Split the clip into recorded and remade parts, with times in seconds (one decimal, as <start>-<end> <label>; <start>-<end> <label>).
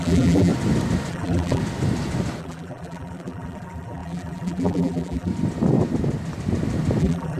0.0-0.5 remade; 0.5-1.1 recorded; 1.1-1.6 remade; 1.6-2.4 recorded; 2.4-5.3 remade; 5.3-7.0 recorded; 7.0-7.4 remade